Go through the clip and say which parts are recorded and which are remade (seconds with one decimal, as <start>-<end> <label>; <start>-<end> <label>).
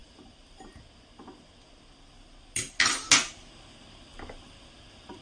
0.0-5.2 recorded